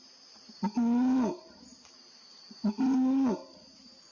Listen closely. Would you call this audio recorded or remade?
recorded